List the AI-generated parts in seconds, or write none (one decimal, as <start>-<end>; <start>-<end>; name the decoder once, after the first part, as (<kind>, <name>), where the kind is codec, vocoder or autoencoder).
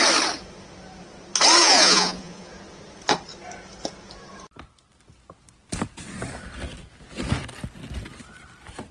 1.6-2.5 (vocoder, Vocos)